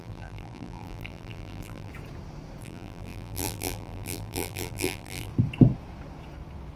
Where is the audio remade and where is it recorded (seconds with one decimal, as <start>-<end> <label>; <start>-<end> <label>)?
0.0-1.9 remade; 1.9-2.6 recorded; 2.6-5.3 remade; 5.3-6.8 recorded